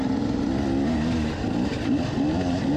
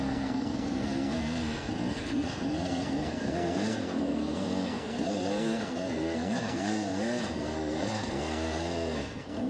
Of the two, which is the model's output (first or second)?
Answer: second